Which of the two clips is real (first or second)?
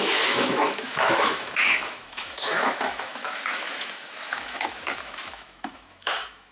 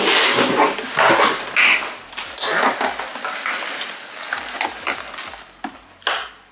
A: second